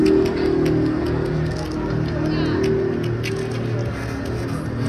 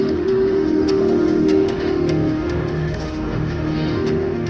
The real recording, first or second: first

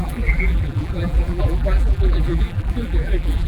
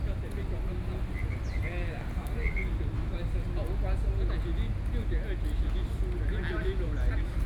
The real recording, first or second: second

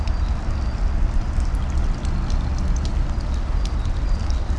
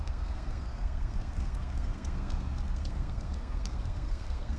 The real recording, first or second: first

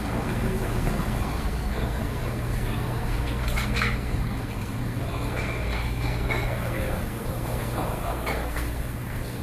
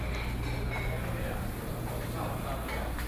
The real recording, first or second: second